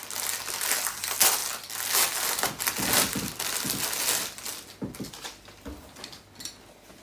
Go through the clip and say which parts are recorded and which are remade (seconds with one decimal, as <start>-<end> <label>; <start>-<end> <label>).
0.0-7.0 recorded